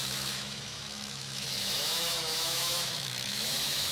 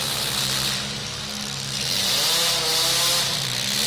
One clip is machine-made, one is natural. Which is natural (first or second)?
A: second